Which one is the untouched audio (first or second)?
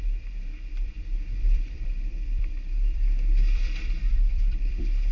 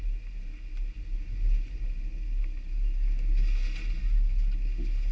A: second